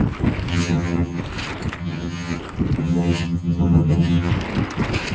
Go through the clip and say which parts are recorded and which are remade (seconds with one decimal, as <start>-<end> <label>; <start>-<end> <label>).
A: 0.0-0.5 recorded; 0.5-1.2 remade; 1.2-1.8 recorded; 1.8-2.4 remade; 2.4-2.8 recorded; 2.8-4.3 remade; 4.3-5.1 recorded